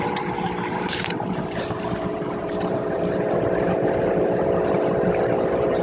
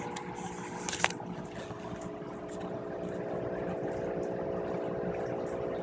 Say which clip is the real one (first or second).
second